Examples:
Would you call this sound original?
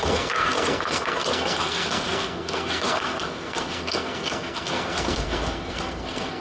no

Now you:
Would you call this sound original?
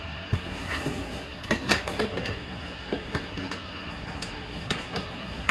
no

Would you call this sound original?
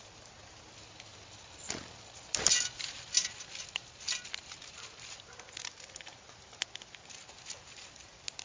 yes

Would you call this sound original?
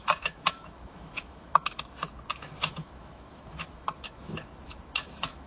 no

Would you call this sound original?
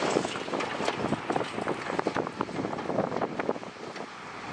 yes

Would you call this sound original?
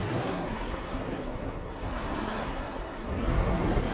no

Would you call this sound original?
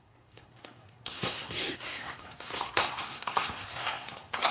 no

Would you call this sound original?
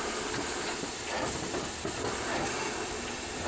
yes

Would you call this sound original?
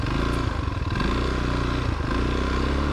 yes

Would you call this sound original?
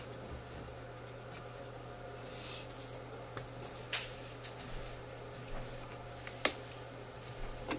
yes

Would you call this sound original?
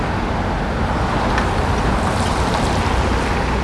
yes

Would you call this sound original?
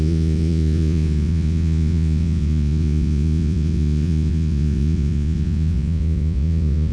no